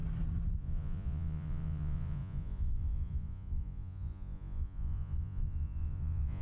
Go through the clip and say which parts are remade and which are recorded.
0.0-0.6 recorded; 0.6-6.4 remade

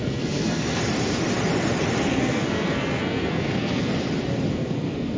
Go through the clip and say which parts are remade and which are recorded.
0.0-0.8 remade; 0.8-2.1 recorded; 2.1-3.9 remade; 3.9-4.5 recorded; 4.5-5.2 remade

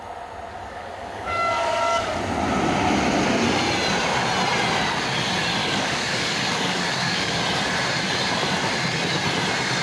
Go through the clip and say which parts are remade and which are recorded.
0.0-0.5 recorded; 0.5-2.2 remade; 2.2-5.6 recorded; 5.6-7.4 remade; 7.4-9.8 recorded